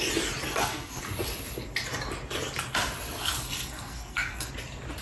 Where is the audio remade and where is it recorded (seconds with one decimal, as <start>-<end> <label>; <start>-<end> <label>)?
0.0-0.5 recorded; 0.5-1.0 remade; 1.0-3.2 recorded; 3.2-4.5 remade; 4.5-5.0 recorded